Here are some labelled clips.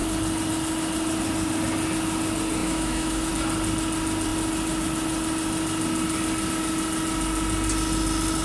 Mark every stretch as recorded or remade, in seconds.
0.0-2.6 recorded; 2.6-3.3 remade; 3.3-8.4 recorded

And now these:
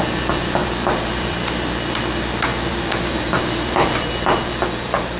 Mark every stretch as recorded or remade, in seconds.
0.0-0.6 recorded; 0.6-1.8 remade; 1.8-2.5 recorded; 2.5-4.1 remade; 4.1-5.2 recorded

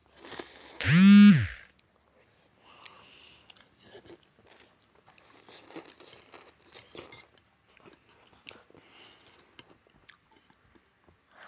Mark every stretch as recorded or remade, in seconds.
0.0-11.5 recorded

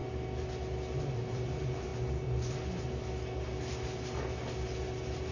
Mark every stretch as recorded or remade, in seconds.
0.0-1.0 recorded; 1.0-1.9 remade; 1.9-5.3 recorded

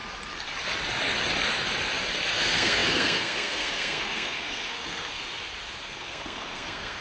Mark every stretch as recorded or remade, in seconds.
0.0-2.3 recorded; 2.3-5.2 remade; 5.2-5.8 recorded; 5.8-7.0 remade

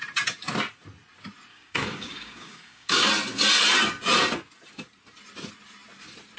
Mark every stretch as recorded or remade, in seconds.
0.0-1.5 recorded; 1.5-3.1 remade; 3.1-6.4 recorded

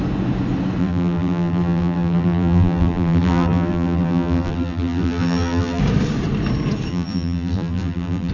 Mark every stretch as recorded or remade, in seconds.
0.0-0.8 recorded; 0.8-5.8 remade; 5.8-6.9 recorded; 6.9-8.3 remade